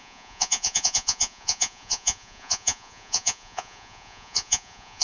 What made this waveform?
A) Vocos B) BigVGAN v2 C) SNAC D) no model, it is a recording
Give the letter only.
A